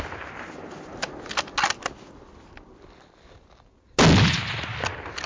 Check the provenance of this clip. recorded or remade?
recorded